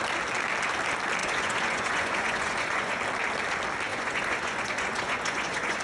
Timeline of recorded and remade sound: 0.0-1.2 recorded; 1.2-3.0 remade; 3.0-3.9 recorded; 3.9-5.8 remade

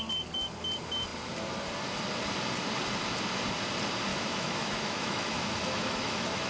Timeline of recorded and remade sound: 0.0-4.1 recorded; 4.1-6.5 remade